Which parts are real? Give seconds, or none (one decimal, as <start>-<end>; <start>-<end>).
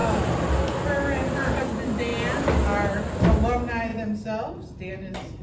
0.0-5.4